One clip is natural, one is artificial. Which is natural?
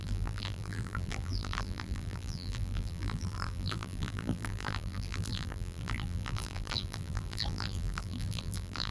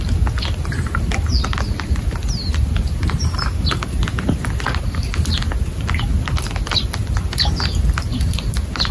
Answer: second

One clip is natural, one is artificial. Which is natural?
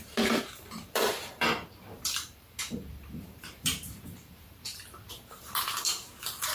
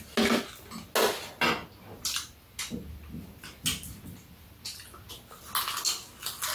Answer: second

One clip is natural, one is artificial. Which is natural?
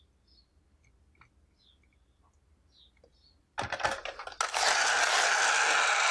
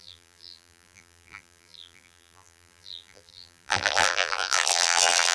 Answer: first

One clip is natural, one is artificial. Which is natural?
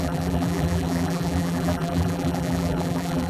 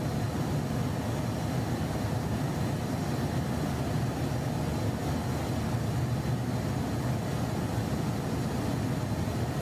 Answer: second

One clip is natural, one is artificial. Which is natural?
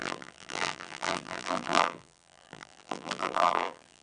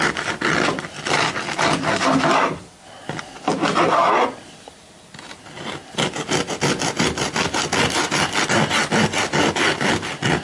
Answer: second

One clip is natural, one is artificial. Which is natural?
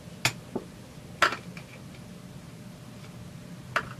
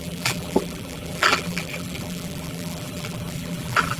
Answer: first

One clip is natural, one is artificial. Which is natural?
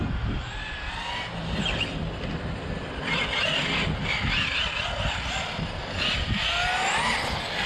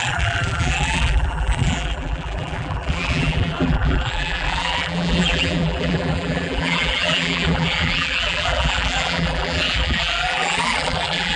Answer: first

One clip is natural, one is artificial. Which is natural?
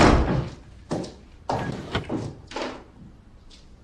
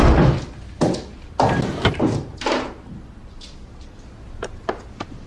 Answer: second